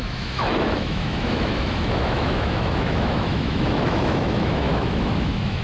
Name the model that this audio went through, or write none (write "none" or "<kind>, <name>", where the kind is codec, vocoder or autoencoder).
autoencoder, DAC-VAE